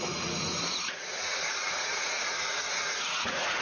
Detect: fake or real fake